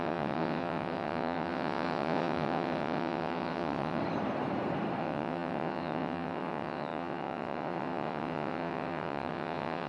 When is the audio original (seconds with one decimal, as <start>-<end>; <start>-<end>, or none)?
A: 4.0-5.0